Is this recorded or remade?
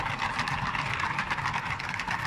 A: recorded